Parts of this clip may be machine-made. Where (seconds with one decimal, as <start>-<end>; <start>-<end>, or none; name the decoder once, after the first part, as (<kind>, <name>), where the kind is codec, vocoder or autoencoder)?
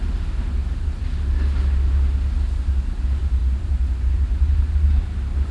none